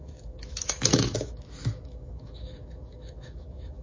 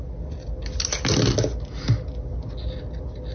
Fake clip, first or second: first